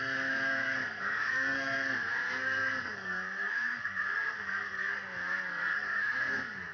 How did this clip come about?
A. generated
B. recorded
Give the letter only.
A